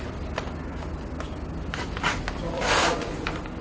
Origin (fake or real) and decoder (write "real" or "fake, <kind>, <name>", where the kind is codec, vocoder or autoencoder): real